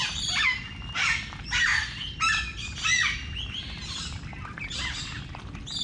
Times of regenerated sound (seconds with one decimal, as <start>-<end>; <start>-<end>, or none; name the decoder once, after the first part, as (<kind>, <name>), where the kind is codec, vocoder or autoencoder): none